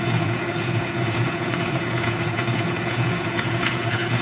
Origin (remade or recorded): remade